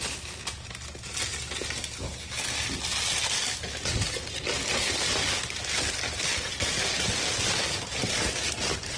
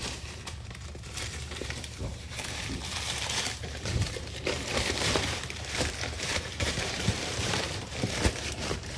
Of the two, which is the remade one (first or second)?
second